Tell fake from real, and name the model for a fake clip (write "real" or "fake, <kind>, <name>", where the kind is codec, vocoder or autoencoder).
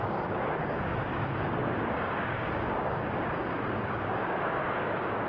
fake, codec, DAC